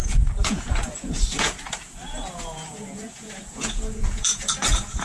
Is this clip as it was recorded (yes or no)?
no